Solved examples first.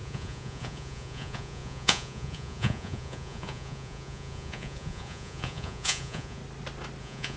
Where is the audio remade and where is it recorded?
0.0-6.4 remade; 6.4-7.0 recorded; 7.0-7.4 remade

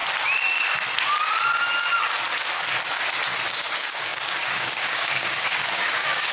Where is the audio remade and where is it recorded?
0.0-3.5 recorded; 3.5-6.3 remade

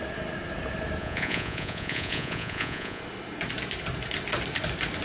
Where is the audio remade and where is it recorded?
0.0-1.0 recorded; 1.0-3.0 remade; 3.0-5.0 recorded

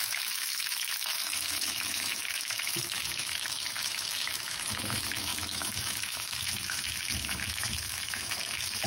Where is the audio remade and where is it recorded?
0.0-8.9 remade

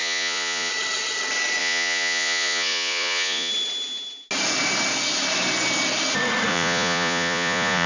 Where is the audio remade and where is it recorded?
0.0-0.7 remade; 0.7-1.6 recorded; 1.6-3.5 remade; 3.5-6.5 recorded; 6.5-7.9 remade

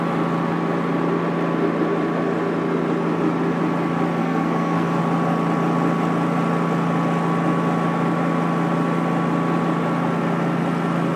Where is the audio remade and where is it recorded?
0.0-4.2 recorded; 4.2-5.0 remade; 5.0-11.2 recorded